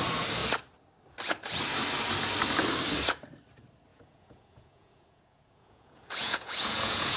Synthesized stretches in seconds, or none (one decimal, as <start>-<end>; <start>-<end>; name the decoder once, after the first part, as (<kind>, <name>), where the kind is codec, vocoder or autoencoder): 3.9-7.2 (vocoder, Vocos)